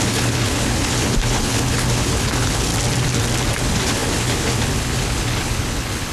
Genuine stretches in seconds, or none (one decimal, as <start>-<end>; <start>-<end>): 2.7-3.6